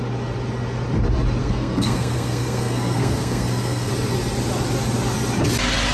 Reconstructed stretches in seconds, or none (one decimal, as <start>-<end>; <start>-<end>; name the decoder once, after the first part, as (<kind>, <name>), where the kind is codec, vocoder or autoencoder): 1.4-3.9 (codec, SNAC)